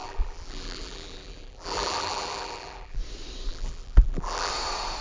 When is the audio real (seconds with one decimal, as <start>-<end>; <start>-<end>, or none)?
3.0-3.5; 4.5-5.0